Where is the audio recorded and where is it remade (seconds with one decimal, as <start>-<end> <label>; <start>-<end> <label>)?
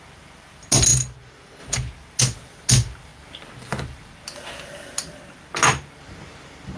0.0-6.8 recorded